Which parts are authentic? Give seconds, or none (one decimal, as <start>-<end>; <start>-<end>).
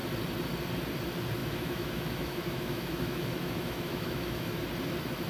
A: 0.0-1.4; 4.6-5.3